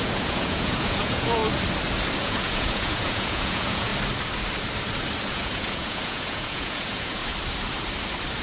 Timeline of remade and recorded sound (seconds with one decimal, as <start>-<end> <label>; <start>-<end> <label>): 0.0-1.4 remade; 1.4-2.2 recorded; 2.2-3.9 remade; 3.9-5.3 recorded; 5.3-7.2 remade; 7.2-8.4 recorded

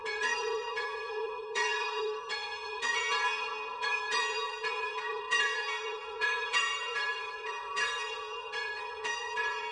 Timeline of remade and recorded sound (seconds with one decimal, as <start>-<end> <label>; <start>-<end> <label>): 0.0-9.7 remade

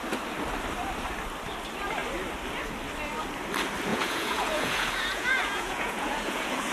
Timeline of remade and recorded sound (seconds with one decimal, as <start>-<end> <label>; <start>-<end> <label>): 0.0-3.9 recorded; 3.9-6.7 remade

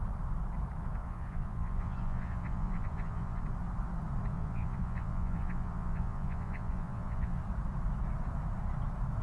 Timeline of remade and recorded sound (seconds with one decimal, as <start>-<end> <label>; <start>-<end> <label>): 0.0-1.0 recorded; 1.0-3.4 remade; 3.4-4.3 recorded; 4.3-7.4 remade; 7.4-9.2 recorded

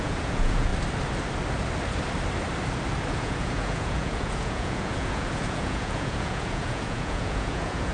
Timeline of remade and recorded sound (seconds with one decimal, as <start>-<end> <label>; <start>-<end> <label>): 0.0-0.7 remade; 0.7-3.1 recorded; 3.1-7.9 remade

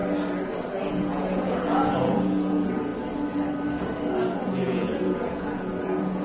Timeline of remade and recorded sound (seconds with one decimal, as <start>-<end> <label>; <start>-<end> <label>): 0.0-0.9 recorded; 0.9-2.9 remade; 2.9-4.4 recorded; 4.4-6.2 remade